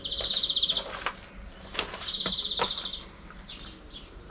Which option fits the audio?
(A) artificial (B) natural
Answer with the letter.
B